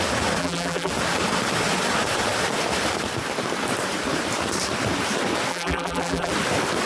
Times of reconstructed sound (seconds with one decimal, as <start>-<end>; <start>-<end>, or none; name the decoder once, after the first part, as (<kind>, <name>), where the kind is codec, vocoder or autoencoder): 0.4-0.9 (vocoder, BigVGAN v2); 5.5-6.3